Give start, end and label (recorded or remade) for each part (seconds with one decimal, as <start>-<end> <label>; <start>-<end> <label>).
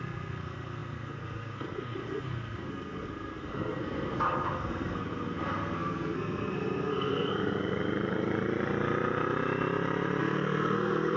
0.0-7.3 remade; 7.3-10.2 recorded; 10.2-11.2 remade